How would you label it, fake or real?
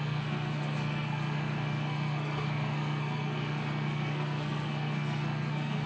fake